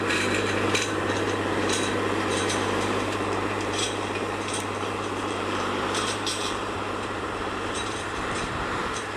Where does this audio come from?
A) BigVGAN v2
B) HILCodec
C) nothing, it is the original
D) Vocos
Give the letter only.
A